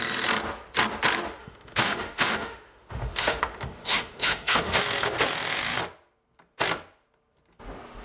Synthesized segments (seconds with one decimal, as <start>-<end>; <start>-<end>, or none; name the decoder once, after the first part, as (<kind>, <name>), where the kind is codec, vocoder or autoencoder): 1.4-5.8 (autoencoder, DAC-VAE)